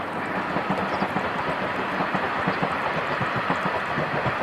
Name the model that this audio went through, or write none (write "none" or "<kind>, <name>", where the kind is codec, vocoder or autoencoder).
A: none